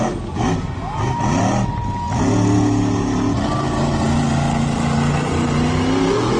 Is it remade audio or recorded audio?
recorded